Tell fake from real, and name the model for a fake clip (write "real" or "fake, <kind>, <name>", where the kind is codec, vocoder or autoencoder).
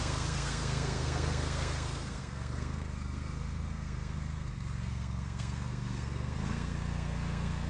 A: fake, codec, SNAC